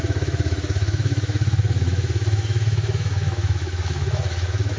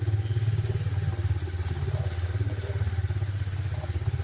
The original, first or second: second